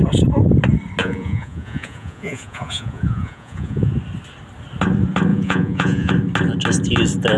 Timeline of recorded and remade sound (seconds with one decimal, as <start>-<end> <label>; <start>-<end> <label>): 0.0-1.0 recorded; 1.0-3.9 remade; 3.9-5.3 recorded; 5.3-6.1 remade; 6.1-7.4 recorded